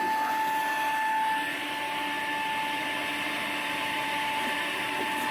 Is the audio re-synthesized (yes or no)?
no